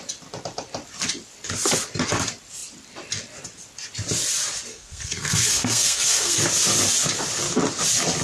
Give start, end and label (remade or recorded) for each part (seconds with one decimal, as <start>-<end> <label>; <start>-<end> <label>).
0.0-4.7 recorded; 4.7-6.4 remade; 6.4-8.2 recorded